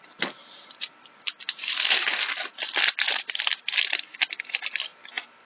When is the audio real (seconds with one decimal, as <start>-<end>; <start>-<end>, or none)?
0.0-5.5